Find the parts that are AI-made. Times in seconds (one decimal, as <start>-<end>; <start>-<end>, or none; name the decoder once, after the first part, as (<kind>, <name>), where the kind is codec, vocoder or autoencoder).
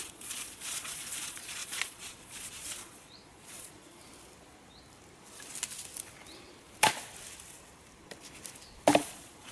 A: 0.0-4.0 (vocoder, Vocos); 9.0-9.5